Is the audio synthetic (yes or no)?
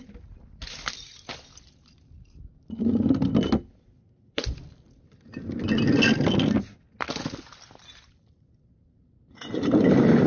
no